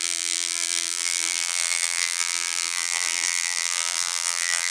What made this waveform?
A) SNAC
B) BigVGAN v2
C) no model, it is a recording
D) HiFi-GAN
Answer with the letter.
B